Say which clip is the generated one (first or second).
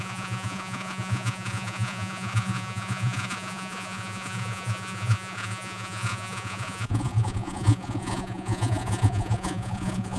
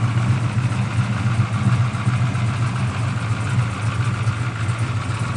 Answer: first